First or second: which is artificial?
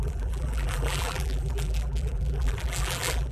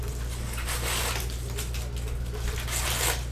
first